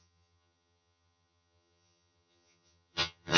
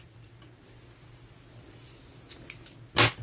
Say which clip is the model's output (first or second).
first